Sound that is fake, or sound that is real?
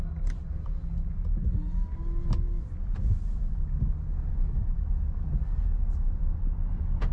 real